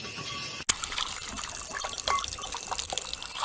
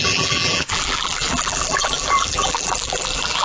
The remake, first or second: second